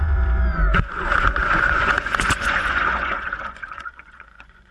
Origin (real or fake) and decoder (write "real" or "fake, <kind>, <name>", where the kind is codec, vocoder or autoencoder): fake, vocoder, Vocos